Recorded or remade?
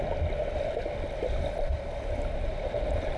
recorded